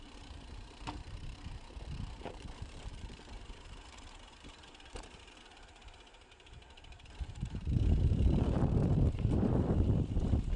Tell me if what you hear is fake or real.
fake